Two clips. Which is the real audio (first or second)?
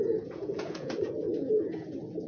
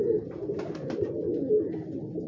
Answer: second